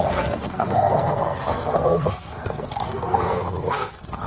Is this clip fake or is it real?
fake